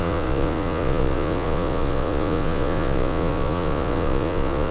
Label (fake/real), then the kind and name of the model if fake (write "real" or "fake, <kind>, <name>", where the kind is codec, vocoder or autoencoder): fake, vocoder, Vocos